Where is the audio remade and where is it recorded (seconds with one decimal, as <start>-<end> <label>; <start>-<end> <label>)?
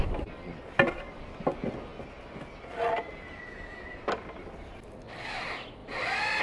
0.0-6.4 recorded